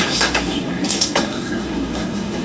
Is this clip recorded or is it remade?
remade